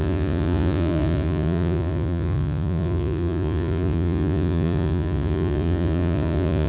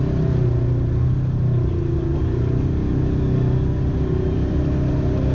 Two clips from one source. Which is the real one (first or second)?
second